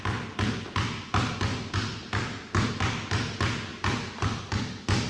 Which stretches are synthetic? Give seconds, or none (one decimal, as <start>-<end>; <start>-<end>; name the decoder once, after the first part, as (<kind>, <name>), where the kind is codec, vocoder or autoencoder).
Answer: 1.5-2.7 (vocoder, BigVGAN v2); 3.7-4.4